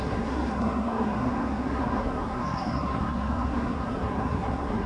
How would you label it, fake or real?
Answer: fake